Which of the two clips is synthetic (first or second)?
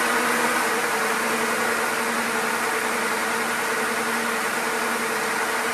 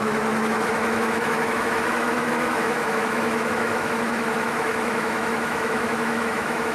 second